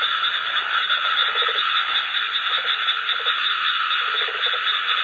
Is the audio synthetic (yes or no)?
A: no